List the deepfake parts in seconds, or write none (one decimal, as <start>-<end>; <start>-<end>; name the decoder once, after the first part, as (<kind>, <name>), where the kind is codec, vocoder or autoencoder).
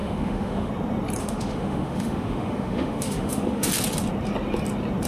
0.0-0.7 (autoencoder, DAC-VAE); 1.2-3.7